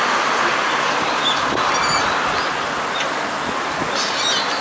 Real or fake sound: real